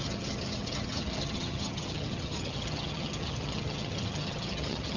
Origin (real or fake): fake